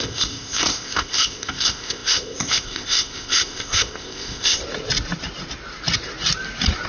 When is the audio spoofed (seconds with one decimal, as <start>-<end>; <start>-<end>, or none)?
0.0-4.6